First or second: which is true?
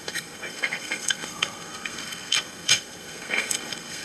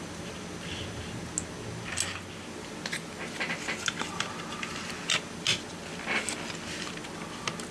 second